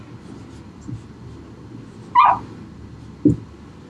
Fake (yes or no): no